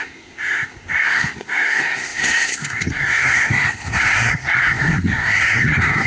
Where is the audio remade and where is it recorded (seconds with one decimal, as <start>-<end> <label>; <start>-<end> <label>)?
0.0-6.1 remade

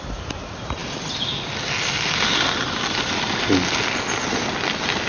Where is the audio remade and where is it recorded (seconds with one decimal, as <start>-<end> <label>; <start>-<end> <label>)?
0.0-5.1 recorded

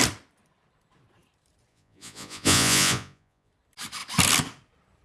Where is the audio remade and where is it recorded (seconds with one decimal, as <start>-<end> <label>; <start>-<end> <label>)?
0.0-1.7 recorded; 1.7-3.5 remade; 3.5-5.0 recorded

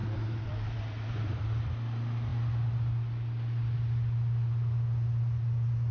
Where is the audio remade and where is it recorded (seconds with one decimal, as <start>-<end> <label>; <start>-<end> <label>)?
0.0-1.4 remade; 1.4-5.9 recorded

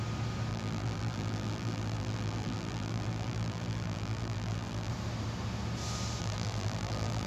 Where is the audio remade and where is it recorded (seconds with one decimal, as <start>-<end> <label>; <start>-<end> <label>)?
0.0-0.5 recorded; 0.5-4.9 remade; 4.9-6.2 recorded; 6.2-7.3 remade

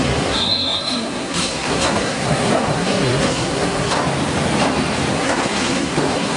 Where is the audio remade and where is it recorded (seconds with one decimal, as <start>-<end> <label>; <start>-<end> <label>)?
0.0-4.0 remade; 4.0-5.1 recorded; 5.1-6.4 remade

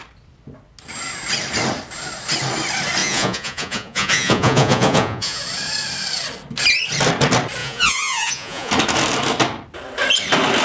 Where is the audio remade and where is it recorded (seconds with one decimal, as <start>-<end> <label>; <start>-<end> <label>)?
0.0-3.0 recorded; 3.0-5.4 remade; 5.4-7.6 recorded; 7.6-8.7 remade; 8.7-10.6 recorded

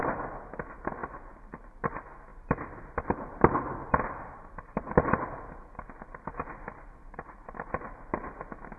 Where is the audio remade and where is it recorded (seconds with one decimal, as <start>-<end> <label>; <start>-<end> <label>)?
0.0-1.0 recorded; 1.0-1.7 remade; 1.7-2.3 recorded; 2.3-5.2 remade; 5.2-8.8 recorded